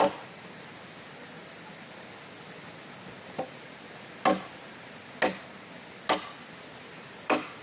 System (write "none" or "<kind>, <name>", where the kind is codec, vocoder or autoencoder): none